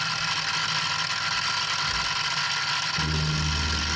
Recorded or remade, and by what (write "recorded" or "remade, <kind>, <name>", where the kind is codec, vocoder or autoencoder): recorded